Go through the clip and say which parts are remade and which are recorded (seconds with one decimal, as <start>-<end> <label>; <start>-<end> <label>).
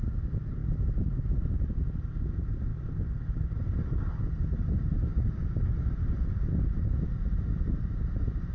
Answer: 0.0-8.5 recorded